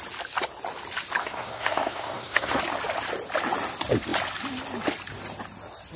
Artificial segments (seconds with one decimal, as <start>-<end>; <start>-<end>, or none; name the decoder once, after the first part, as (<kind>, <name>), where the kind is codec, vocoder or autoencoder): 1.2-2.6 (codec, SNAC)